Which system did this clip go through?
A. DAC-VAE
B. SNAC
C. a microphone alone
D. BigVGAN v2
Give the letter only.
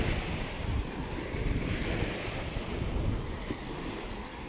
C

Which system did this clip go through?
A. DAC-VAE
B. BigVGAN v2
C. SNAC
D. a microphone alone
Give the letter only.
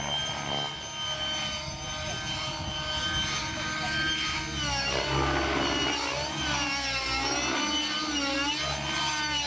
D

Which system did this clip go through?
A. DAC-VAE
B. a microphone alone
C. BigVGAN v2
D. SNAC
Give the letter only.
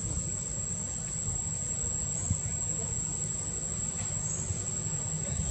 B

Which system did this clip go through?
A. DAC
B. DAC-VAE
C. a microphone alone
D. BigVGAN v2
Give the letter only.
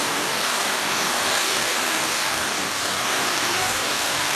A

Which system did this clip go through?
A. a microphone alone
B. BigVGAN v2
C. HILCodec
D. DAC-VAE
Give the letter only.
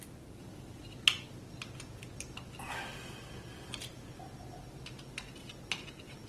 A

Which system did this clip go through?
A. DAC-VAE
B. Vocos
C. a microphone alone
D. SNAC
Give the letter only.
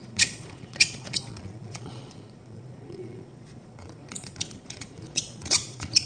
B